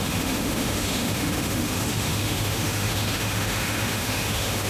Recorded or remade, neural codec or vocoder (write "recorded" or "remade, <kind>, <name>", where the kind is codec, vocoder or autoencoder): remade, autoencoder, DAC-VAE